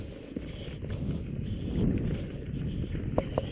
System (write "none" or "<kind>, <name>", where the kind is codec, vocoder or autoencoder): none